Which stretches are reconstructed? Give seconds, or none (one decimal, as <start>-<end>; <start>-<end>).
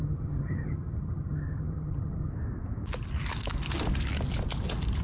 0.0-2.3